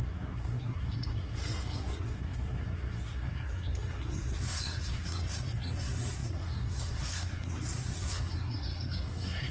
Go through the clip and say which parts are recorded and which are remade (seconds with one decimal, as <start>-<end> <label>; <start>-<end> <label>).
0.0-9.5 remade